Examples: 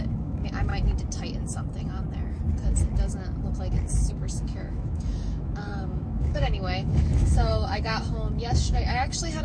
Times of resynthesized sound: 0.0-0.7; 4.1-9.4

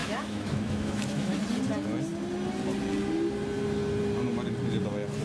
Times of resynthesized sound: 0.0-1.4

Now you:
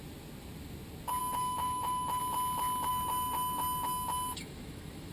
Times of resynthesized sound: 1.2-2.2; 2.9-5.1

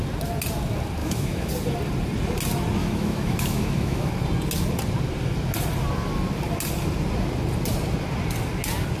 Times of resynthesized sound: 1.0-1.5; 2.8-4.1

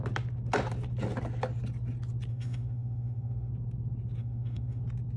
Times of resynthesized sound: 2.3-3.5; 4.2-4.8

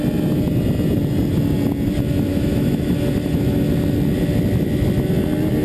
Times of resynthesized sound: 2.3-2.9

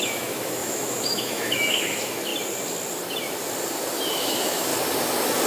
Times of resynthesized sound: 0.0-2.3; 4.1-4.7